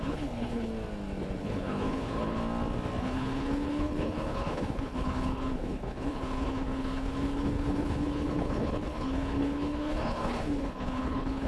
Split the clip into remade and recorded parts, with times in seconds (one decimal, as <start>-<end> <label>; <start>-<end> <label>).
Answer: 0.0-0.7 remade; 0.7-1.4 recorded; 1.4-2.4 remade; 2.4-3.0 recorded; 3.0-11.5 remade